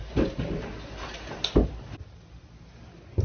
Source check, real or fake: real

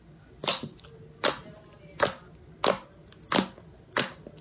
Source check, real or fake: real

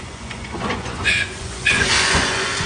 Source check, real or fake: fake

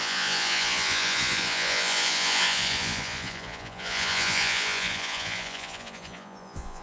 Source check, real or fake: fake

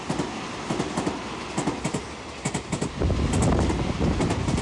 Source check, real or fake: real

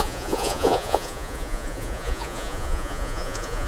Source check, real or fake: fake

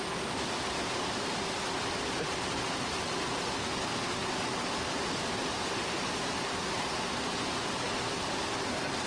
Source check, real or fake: real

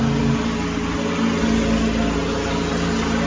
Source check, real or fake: real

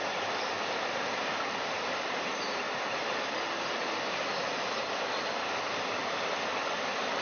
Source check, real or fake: real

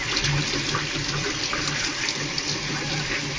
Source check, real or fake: real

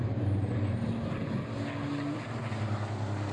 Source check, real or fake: real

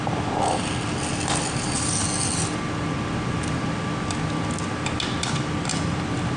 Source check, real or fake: real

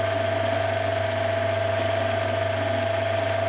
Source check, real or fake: real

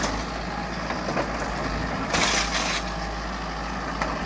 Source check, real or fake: real